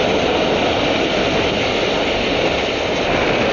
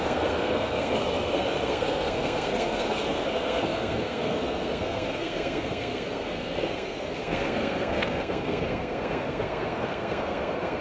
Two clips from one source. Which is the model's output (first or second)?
second